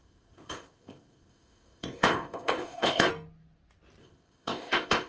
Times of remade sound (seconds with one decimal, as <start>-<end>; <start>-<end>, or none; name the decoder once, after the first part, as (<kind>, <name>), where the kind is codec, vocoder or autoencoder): 0.0-3.1 (codec, ZipCodec); 4.0-5.1